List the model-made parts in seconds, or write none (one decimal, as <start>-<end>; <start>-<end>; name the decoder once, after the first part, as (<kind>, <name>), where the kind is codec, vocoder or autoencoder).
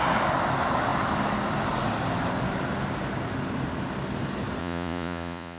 4.6-5.6 (vocoder, Vocos)